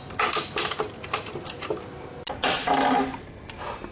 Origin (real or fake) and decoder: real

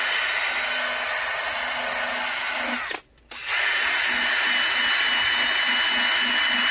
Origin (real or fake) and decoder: real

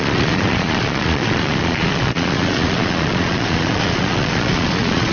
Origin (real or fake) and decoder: fake, vocoder, Vocos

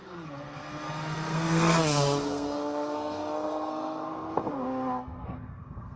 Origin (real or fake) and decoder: fake, codec, SNAC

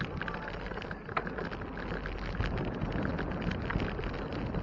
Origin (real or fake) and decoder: real